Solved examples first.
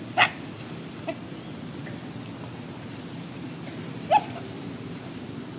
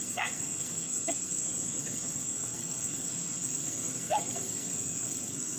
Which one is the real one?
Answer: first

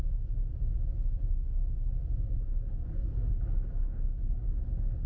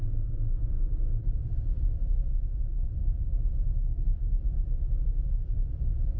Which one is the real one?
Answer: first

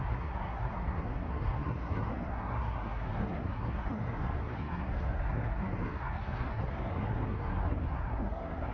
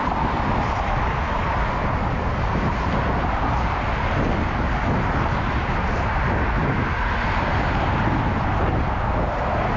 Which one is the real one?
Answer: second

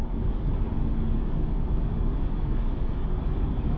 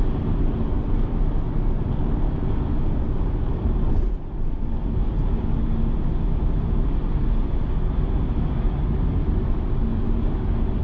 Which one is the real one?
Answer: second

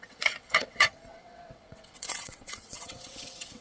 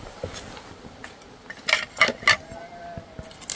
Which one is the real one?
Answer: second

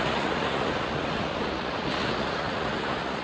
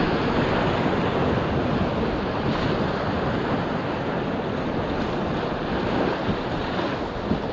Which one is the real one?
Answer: second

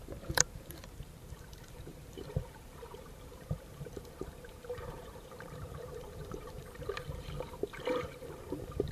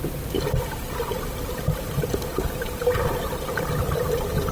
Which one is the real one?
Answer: second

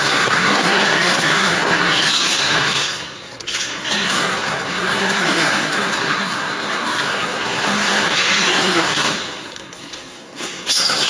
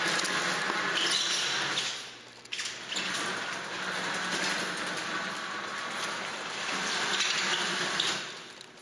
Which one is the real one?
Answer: second